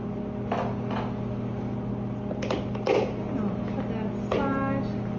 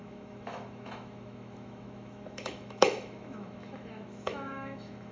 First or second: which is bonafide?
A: first